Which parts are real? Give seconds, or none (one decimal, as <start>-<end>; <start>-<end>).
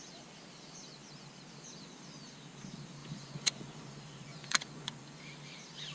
0.0-3.0; 5.2-5.9